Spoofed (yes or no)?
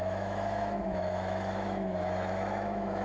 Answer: yes